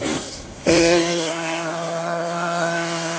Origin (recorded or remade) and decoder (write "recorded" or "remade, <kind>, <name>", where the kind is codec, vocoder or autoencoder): remade, codec, SNAC